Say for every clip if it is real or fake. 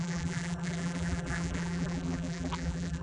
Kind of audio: fake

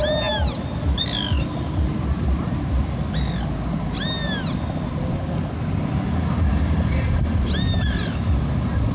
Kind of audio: real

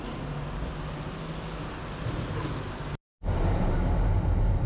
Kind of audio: real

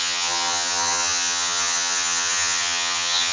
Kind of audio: fake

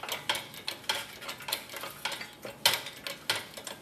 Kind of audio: real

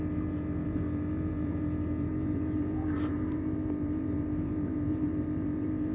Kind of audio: fake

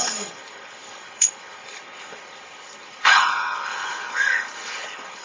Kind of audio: fake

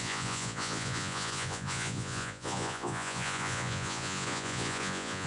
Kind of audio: fake